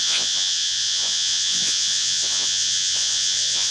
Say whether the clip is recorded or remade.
remade